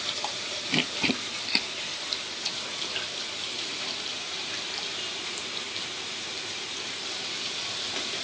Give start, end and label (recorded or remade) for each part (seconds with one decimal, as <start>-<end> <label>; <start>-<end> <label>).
0.0-1.9 remade; 1.9-3.2 recorded; 3.2-8.2 remade